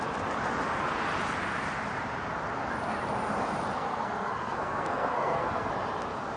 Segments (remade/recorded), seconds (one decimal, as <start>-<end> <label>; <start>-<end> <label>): 0.0-3.7 recorded; 3.7-5.7 remade; 5.7-6.4 recorded